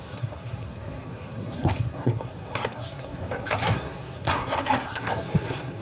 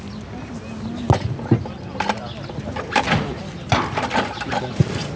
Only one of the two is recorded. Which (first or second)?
second